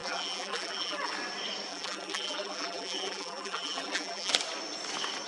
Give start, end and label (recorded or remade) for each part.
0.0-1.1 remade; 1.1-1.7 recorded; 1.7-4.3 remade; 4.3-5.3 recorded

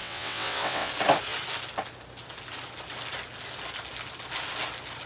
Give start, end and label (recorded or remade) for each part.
0.0-0.9 remade; 0.9-5.1 recorded

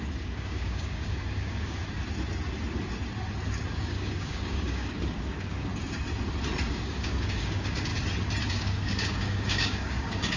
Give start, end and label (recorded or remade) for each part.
0.0-1.8 remade; 1.8-3.8 recorded; 3.8-5.7 remade; 5.7-6.7 recorded; 6.7-7.9 remade; 7.9-8.5 recorded; 8.5-10.4 remade

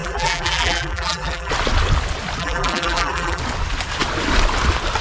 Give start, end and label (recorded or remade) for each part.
0.0-1.5 remade; 1.5-2.4 recorded; 2.4-3.4 remade; 3.4-5.0 recorded

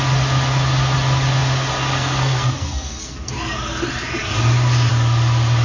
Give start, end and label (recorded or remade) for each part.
0.0-1.9 recorded; 1.9-3.3 remade; 3.3-5.6 recorded

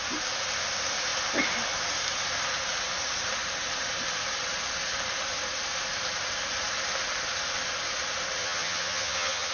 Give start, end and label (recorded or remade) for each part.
0.0-8.4 recorded; 8.4-9.5 remade